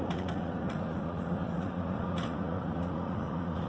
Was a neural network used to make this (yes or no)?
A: yes